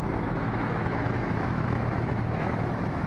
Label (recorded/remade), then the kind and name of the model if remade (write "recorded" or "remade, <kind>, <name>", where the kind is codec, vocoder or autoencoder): remade, autoencoder, DAC-VAE